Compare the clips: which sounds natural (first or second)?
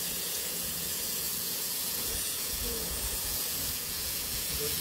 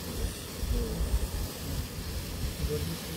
second